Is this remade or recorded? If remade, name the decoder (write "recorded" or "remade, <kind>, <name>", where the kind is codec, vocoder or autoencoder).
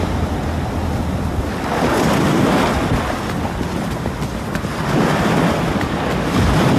recorded